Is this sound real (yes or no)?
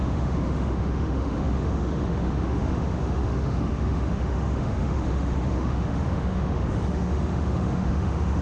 no